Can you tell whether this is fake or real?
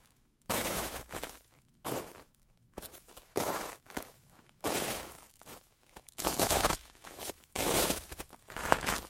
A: fake